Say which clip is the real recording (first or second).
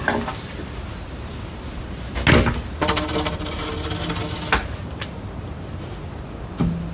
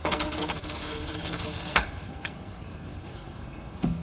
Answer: first